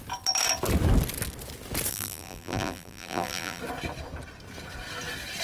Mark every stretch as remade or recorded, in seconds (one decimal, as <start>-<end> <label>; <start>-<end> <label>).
0.0-1.9 recorded; 1.9-3.6 remade; 3.6-5.4 recorded